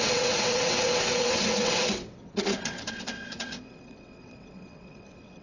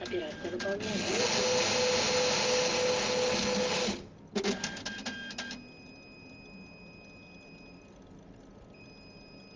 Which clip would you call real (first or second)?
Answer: second